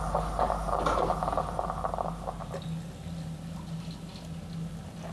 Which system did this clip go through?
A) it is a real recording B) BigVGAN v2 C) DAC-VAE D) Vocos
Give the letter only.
A